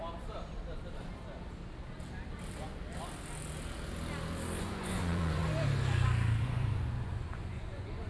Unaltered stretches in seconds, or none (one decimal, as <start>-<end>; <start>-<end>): 0.0-4.6; 5.4-6.4

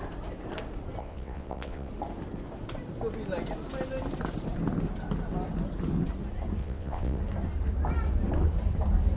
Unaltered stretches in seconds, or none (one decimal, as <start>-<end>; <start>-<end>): 0.0-1.0; 1.9-6.6; 7.2-9.2

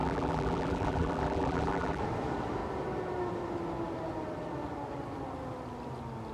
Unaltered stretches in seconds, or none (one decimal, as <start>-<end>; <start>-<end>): 2.0-6.3

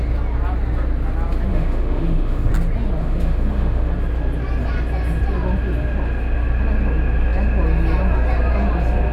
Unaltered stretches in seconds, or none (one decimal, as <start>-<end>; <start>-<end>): 0.0-1.5; 2.5-3.0; 3.9-9.1

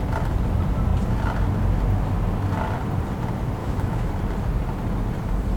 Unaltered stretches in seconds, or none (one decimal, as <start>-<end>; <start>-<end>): 0.0-3.6; 4.1-5.6

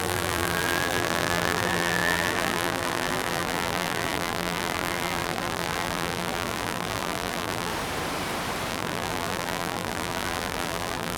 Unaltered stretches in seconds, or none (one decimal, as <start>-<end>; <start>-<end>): 7.7-8.7

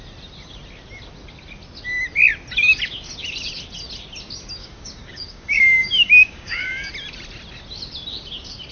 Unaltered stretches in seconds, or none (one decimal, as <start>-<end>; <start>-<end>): 0.0-4.6; 6.9-8.7

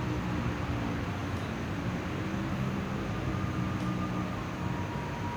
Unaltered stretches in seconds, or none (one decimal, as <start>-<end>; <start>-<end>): 0.0-5.4